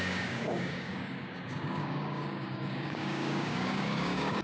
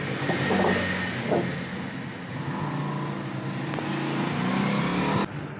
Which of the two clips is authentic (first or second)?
second